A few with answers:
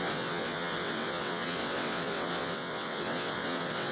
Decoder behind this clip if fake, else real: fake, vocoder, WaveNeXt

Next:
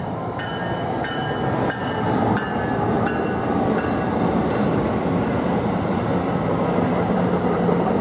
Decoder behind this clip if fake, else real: real